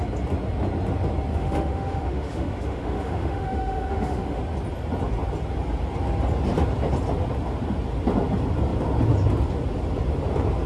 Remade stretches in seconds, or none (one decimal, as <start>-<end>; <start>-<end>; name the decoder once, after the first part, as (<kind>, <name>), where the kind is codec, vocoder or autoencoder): 1.3-4.4 (autoencoder, DAC-VAE)